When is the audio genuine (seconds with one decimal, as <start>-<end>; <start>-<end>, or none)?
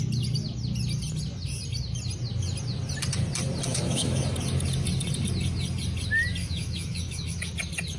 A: 0.0-3.7; 4.2-6.4; 7.5-8.0